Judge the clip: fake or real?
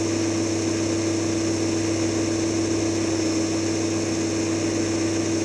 real